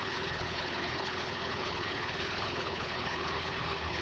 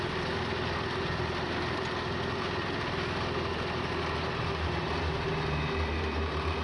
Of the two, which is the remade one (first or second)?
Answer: first